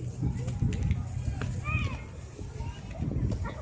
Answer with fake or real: real